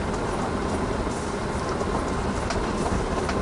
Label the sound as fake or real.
real